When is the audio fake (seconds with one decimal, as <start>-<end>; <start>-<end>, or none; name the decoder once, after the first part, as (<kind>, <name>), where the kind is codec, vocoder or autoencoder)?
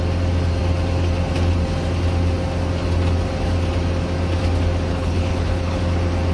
4.9-5.8 (codec, HILCodec)